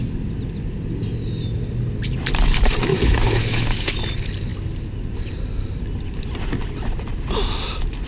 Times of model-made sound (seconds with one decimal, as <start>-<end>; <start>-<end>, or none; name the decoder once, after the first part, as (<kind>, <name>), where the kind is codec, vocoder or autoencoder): 2.9-4.1 (autoencoder, DAC-VAE)